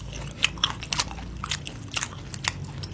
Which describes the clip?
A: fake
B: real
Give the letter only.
B